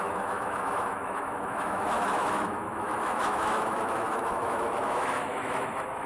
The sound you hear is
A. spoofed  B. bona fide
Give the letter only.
A